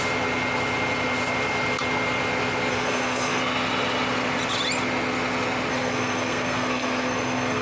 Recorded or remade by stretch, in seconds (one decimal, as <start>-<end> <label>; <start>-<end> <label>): 0.0-2.7 recorded; 2.7-3.4 remade; 3.4-5.7 recorded; 5.7-7.6 remade